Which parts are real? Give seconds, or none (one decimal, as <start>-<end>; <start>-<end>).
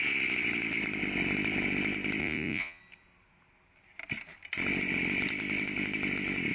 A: 0.0-2.2; 2.8-6.5